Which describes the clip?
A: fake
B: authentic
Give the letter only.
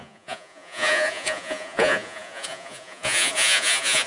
A